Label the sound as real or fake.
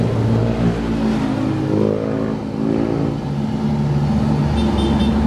real